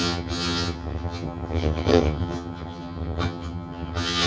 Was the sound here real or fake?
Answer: fake